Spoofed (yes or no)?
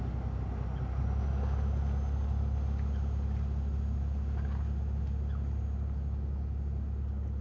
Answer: no